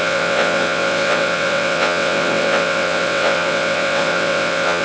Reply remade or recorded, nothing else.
remade